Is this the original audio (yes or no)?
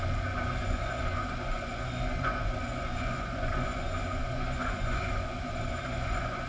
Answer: no